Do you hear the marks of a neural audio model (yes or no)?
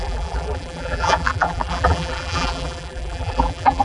yes